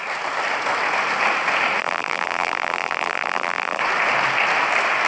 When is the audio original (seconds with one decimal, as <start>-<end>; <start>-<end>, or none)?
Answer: 0.0-1.8; 3.8-5.1